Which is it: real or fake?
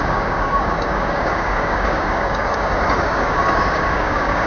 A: fake